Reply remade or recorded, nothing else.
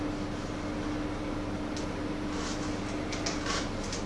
recorded